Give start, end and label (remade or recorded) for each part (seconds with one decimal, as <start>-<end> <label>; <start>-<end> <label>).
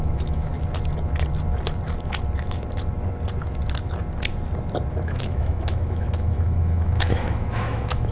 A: 0.0-0.5 remade; 0.5-4.9 recorded; 4.9-8.1 remade